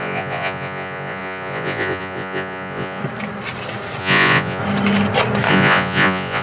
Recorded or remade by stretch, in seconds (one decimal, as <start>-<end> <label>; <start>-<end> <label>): 0.0-3.0 remade; 3.0-4.0 recorded; 4.0-4.6 remade; 4.6-5.5 recorded; 5.5-6.4 remade